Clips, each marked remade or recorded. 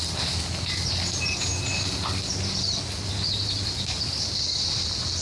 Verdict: recorded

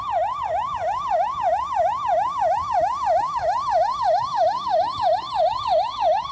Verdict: remade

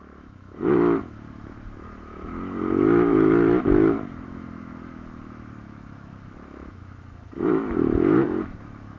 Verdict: remade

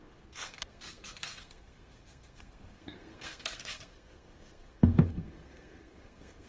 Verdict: remade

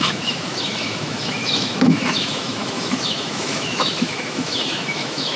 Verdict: remade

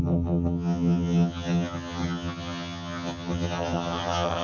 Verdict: remade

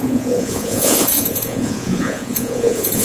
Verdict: remade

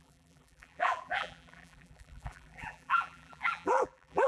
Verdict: remade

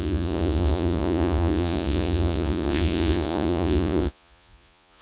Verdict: remade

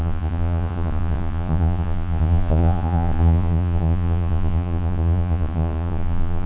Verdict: remade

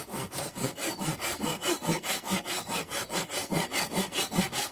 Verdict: remade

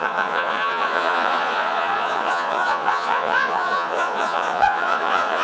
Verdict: remade